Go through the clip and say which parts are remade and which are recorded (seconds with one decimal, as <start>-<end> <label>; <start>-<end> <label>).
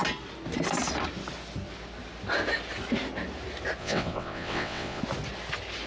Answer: 0.0-3.8 recorded; 3.8-5.0 remade; 5.0-5.9 recorded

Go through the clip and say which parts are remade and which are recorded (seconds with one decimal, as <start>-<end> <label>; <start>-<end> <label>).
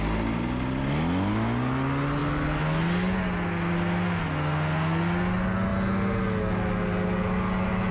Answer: 0.0-7.9 recorded